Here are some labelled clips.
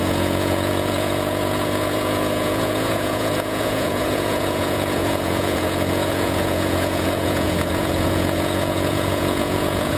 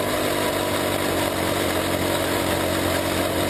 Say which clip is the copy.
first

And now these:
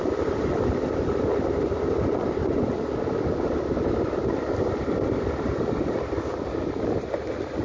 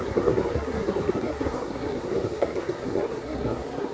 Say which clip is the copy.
second